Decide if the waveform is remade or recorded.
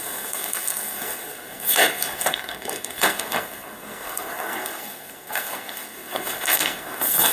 remade